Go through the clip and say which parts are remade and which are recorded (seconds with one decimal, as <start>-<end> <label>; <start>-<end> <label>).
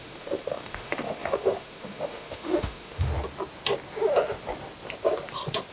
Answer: 0.0-3.1 remade; 3.1-5.7 recorded